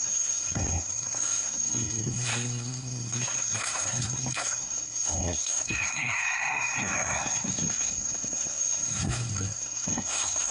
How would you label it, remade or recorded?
remade